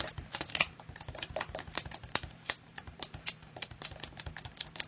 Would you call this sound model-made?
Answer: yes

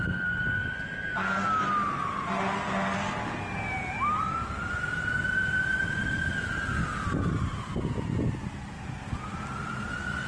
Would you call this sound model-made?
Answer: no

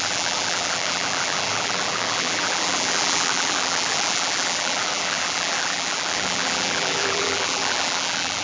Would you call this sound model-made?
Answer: yes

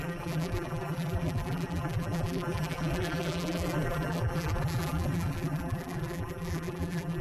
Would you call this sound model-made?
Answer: yes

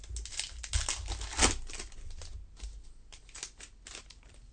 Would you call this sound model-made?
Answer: no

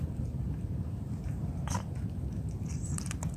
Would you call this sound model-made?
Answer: yes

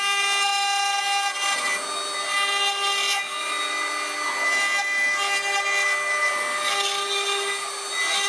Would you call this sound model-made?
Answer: no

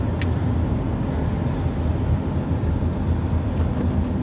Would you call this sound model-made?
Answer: no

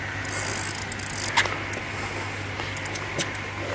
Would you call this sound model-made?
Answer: no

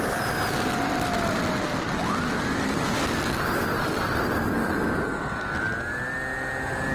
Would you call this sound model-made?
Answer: no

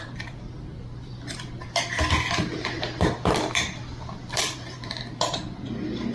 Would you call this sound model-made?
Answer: yes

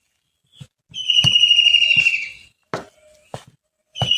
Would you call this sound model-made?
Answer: no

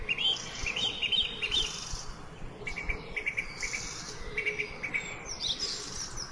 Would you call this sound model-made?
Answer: yes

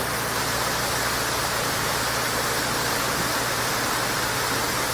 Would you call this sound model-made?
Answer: no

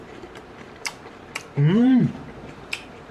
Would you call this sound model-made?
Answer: yes